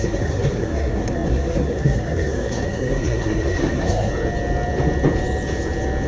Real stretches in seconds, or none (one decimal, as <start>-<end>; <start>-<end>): 4.1-6.1